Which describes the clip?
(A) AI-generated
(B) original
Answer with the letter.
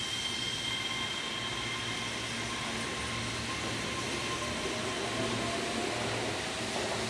B